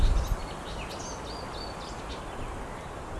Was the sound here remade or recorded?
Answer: recorded